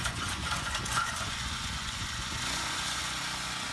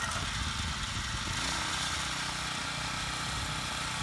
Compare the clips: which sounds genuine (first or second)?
second